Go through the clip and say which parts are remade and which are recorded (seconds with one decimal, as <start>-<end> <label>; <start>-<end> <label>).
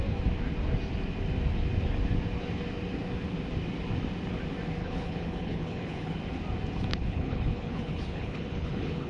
0.0-4.8 recorded; 4.8-6.2 remade; 6.2-6.9 recorded; 6.9-9.1 remade